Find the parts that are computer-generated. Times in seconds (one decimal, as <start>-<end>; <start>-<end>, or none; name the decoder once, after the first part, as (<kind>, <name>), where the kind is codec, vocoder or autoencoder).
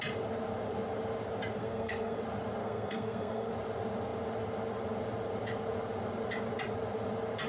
1.6-2.2 (codec, SNAC); 2.6-3.5